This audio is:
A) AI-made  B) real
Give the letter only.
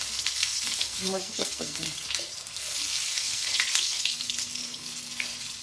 A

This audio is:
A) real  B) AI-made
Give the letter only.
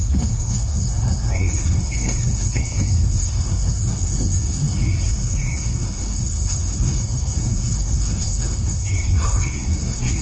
B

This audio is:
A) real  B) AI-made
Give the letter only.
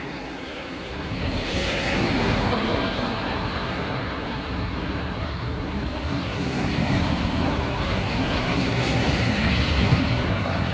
B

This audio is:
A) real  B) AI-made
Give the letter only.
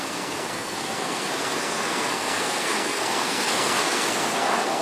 B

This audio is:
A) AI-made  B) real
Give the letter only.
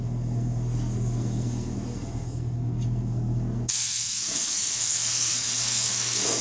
A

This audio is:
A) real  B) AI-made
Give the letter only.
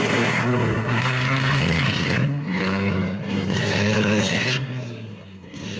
B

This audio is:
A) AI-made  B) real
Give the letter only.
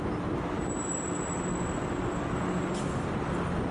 B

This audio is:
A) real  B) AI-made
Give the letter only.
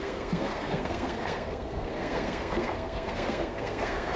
B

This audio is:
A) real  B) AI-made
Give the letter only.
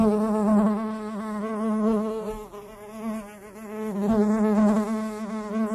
A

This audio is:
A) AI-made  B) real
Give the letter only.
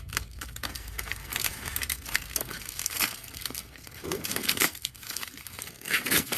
A